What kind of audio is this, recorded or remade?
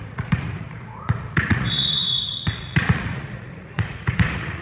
remade